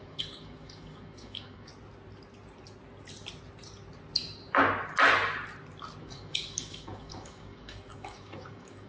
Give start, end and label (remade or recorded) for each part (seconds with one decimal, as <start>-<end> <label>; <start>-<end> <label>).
0.0-1.7 remade; 1.7-6.0 recorded; 6.0-8.9 remade